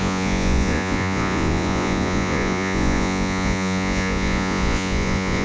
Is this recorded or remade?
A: remade